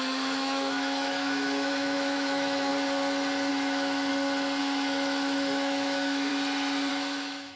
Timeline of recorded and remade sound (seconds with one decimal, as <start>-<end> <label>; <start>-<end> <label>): 0.0-2.7 remade; 2.7-3.5 recorded; 3.5-4.1 remade; 4.1-4.6 recorded; 4.6-6.3 remade; 6.3-6.9 recorded; 6.9-7.6 remade